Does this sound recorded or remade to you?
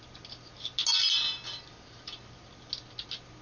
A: recorded